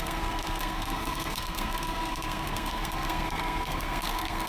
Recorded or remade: remade